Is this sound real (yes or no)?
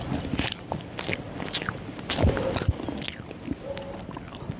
yes